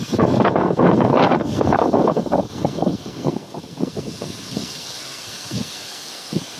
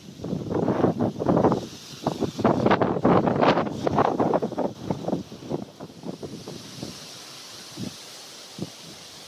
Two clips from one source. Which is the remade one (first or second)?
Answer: first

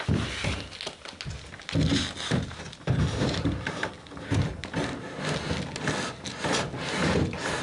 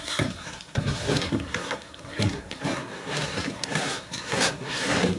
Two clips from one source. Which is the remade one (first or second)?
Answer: second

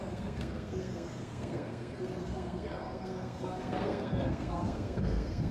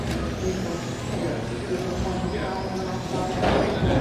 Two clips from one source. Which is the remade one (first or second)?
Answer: first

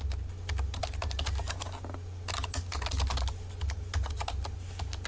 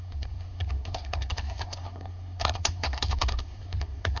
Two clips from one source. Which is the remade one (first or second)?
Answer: second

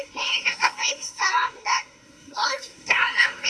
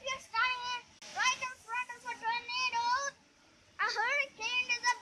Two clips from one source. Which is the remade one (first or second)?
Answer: first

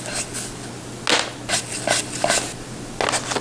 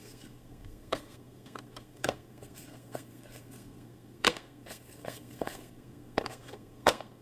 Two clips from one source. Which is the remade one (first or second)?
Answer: second